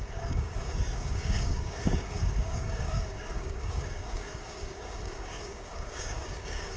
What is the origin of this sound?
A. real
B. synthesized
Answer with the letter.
B